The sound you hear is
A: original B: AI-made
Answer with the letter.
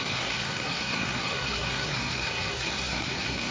B